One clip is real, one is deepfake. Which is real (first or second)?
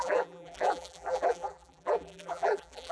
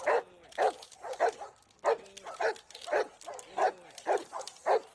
second